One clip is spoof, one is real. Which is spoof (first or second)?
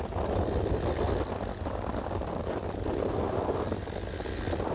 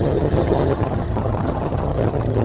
second